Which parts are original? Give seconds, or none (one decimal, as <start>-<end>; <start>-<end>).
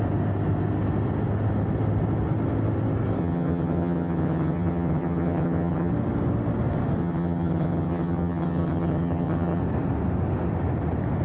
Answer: 0.0-3.2; 5.9-7.0; 9.6-11.2